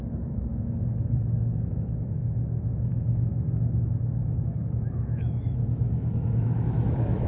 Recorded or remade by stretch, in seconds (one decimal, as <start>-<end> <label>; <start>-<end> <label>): 0.0-7.3 remade